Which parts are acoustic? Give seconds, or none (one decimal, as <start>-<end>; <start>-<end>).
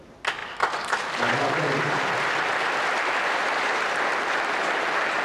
0.0-5.2